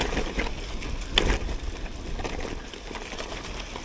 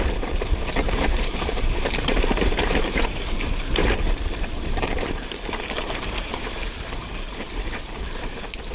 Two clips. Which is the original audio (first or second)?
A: first